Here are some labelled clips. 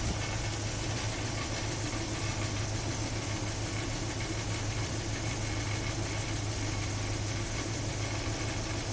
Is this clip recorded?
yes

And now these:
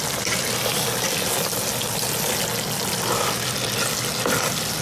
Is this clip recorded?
yes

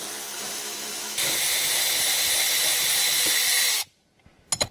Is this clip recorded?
no